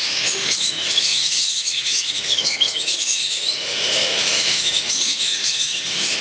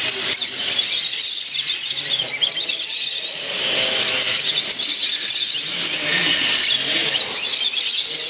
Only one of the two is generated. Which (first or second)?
first